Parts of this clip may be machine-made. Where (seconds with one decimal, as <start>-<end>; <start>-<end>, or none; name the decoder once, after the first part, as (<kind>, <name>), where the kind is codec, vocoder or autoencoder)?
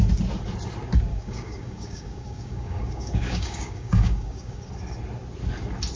1.1-4.7 (codec, DAC)